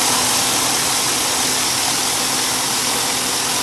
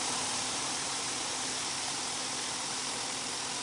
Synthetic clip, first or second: second